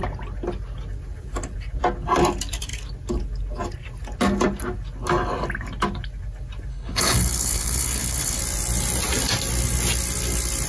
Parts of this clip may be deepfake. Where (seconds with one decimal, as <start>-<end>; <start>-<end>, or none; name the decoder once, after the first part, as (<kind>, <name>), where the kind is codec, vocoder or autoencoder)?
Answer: 6.7-8.4 (codec, HILCodec)